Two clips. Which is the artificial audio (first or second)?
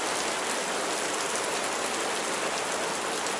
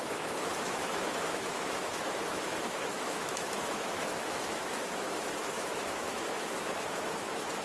second